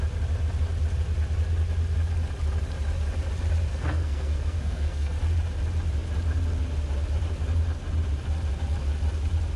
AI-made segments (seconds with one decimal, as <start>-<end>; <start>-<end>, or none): 3.7-5.2